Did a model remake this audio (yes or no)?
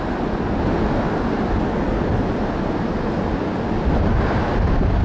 no